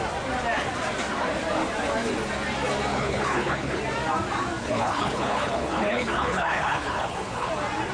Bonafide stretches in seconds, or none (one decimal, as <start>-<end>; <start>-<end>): 0.0-2.9; 3.8-4.6; 7.5-7.9